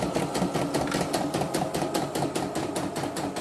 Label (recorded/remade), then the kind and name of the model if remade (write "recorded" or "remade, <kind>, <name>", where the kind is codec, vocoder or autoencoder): recorded